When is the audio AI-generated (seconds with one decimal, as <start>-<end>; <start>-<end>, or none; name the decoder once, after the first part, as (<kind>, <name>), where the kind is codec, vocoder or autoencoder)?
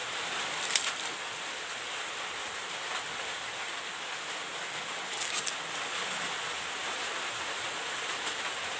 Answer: none